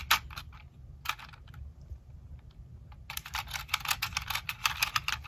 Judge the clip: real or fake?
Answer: real